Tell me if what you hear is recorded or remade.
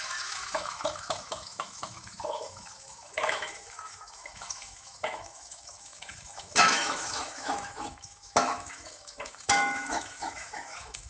remade